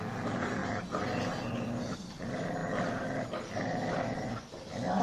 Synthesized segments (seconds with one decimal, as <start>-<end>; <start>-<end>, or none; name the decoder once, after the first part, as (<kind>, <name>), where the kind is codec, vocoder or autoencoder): none